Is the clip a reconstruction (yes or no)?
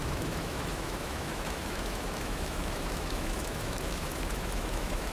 yes